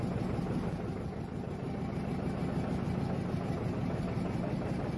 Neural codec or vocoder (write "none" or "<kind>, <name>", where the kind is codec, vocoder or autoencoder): none